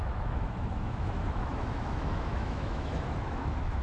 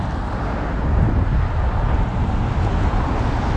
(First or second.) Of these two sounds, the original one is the second